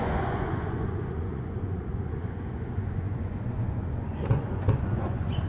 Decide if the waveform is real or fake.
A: fake